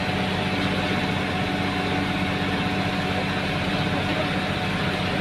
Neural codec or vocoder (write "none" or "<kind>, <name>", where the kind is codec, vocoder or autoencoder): none